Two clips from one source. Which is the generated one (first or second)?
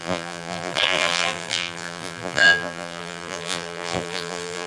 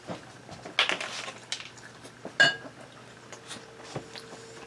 first